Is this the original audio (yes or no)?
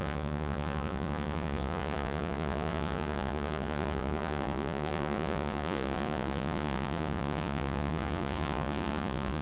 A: no